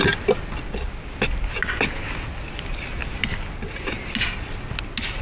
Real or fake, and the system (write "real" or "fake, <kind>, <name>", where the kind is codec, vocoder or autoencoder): real